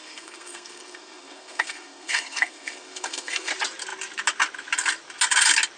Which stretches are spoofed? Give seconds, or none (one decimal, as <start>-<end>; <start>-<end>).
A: 0.0-3.5